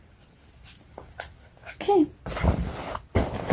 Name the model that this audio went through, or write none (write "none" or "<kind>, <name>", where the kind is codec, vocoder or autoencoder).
none